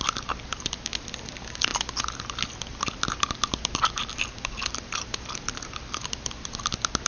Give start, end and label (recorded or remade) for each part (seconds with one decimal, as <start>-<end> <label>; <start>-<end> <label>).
0.0-7.1 recorded